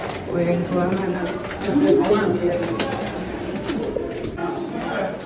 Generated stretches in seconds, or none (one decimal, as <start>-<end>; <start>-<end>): 0.6-3.8